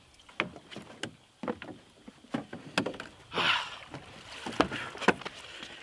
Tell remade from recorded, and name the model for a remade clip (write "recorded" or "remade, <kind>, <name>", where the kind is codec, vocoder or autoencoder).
recorded